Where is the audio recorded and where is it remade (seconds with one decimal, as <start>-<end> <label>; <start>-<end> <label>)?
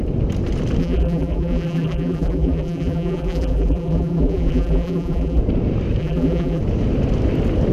0.0-0.8 recorded; 0.8-5.4 remade; 5.4-6.0 recorded; 6.0-6.6 remade; 6.6-7.7 recorded